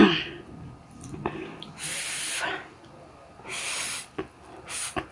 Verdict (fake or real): real